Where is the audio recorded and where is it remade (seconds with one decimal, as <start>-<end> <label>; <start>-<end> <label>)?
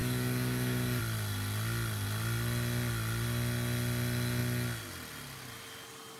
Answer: 0.0-1.0 remade; 1.0-6.2 recorded